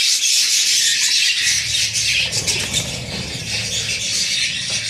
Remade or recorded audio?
recorded